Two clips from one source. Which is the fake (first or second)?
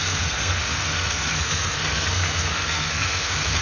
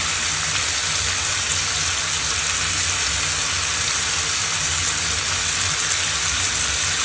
first